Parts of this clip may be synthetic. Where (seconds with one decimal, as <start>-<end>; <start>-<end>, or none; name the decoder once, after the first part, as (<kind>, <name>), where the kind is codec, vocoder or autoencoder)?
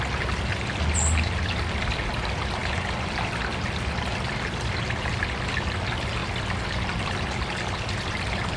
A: none